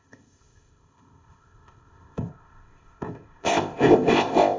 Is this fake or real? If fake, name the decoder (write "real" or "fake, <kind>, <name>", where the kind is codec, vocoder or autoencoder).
fake, codec, ZipCodec